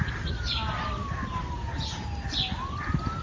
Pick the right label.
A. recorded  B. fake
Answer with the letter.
A